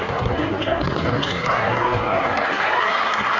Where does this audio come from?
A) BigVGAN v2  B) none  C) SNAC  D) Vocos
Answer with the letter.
C